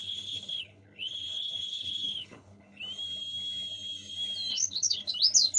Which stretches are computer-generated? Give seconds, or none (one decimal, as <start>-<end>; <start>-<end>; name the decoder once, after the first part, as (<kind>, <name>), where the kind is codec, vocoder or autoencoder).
0.0-2.8 (codec, HILCodec); 4.5-5.1